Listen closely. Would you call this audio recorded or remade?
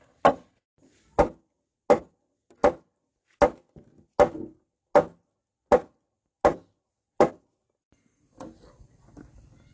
recorded